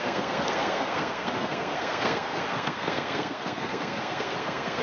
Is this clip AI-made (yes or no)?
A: yes